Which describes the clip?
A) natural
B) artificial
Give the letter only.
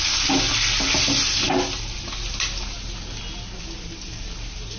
A